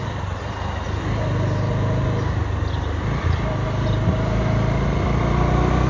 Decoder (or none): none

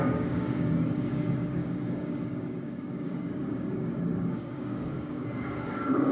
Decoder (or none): codec, DAC